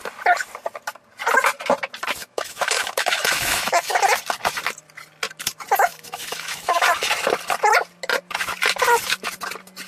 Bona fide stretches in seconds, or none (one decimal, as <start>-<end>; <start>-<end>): 0.0-2.2; 4.0-5.9; 6.9-9.9